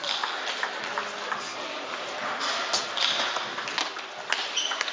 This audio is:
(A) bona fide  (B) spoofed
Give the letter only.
A